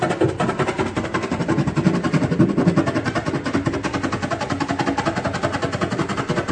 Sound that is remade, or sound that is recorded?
recorded